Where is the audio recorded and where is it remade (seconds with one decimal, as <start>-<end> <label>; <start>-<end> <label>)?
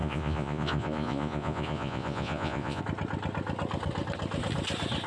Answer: 0.0-2.8 remade; 2.8-5.1 recorded